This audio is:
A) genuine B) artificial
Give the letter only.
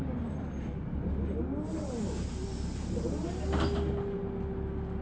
A